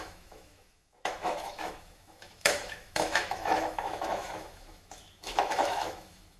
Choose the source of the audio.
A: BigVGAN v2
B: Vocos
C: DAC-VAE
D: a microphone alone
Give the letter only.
C